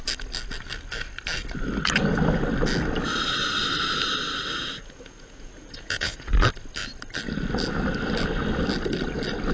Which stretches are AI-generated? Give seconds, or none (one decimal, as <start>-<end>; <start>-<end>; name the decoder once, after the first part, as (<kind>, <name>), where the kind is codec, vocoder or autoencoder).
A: 4.5-6.3 (vocoder, Vocos)